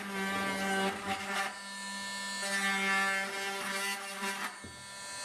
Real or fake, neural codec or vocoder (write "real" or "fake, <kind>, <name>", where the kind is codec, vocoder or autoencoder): real